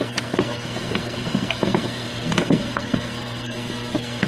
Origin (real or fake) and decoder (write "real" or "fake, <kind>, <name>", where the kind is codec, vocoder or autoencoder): fake, codec, SNAC